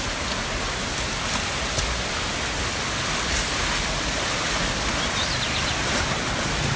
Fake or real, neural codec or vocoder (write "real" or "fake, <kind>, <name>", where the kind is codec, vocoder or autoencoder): real